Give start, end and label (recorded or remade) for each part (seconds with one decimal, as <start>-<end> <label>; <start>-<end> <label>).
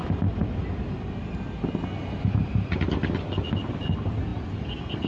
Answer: 0.0-5.1 recorded